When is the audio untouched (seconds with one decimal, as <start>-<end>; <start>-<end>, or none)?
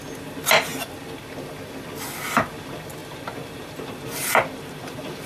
0.0-3.0